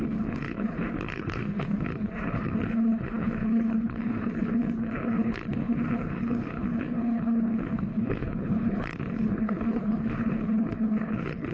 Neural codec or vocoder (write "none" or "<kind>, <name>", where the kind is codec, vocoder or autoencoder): codec, HILCodec